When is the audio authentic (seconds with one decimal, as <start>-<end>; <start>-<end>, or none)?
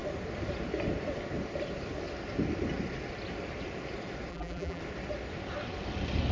0.0-4.3; 4.8-6.3